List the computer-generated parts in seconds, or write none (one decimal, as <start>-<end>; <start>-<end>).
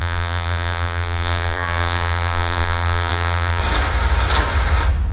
0.0-3.6